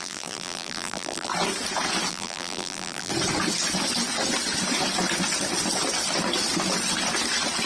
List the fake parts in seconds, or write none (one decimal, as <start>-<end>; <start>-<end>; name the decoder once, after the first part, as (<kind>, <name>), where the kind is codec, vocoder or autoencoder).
0.0-1.3 (vocoder, BigVGAN v2); 2.1-3.1